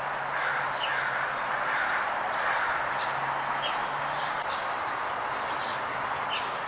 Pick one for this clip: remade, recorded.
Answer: recorded